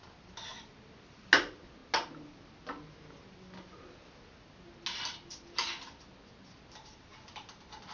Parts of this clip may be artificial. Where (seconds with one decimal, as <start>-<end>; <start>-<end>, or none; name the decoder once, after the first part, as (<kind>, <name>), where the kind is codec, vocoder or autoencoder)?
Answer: none

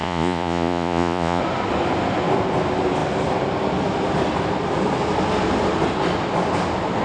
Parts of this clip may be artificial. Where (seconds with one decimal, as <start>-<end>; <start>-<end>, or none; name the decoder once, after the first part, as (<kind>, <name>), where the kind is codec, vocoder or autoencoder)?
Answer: 0.0-1.4 (vocoder, Vocos)

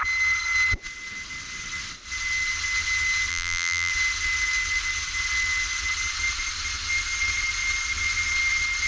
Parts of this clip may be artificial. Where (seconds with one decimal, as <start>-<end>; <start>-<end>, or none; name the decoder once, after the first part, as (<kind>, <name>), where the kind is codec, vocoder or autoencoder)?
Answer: 3.3-3.9 (vocoder, BigVGAN v2)

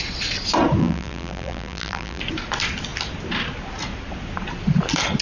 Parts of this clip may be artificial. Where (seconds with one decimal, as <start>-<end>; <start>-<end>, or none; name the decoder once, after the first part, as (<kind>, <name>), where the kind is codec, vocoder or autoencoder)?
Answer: 0.8-2.2 (vocoder, BigVGAN v2)